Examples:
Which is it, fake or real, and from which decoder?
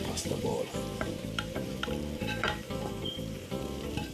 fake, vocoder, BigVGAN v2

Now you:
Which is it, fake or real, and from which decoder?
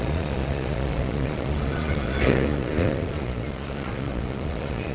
fake, vocoder, Vocos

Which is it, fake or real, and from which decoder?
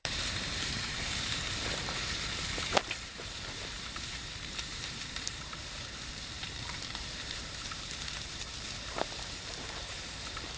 fake, vocoder, BigVGAN v2